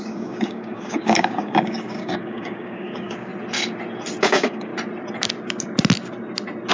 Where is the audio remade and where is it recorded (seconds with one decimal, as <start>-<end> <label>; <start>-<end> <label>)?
0.0-3.3 remade; 3.3-4.2 recorded; 4.2-4.7 remade; 4.7-6.7 recorded